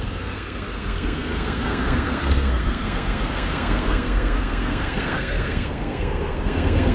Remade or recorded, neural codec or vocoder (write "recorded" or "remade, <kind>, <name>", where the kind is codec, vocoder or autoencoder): remade, codec, SNAC